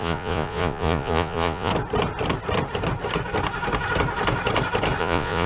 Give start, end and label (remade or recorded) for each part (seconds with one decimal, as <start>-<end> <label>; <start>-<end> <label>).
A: 0.0-1.7 remade; 1.7-5.0 recorded; 5.0-5.5 remade